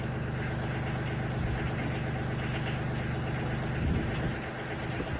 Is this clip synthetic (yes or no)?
no